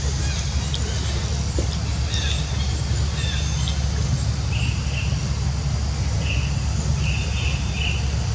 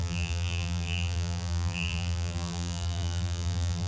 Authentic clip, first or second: first